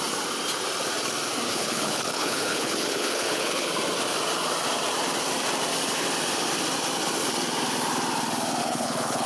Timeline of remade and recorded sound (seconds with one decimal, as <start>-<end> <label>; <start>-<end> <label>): 0.0-1.5 recorded; 1.5-3.7 remade; 3.7-8.6 recorded; 8.6-9.3 remade